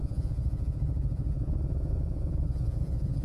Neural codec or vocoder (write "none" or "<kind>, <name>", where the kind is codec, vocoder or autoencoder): vocoder, Vocos